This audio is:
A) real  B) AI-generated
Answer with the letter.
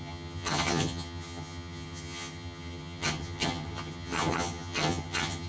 B